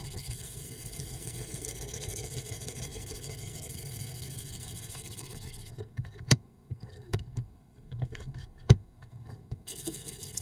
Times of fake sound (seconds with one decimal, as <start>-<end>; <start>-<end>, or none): 0.0-10.4